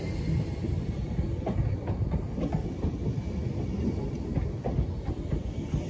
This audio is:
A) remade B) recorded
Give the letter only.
B